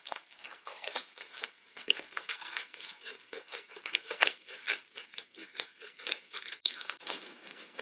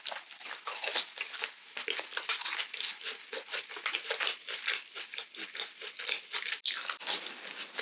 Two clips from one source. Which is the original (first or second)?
second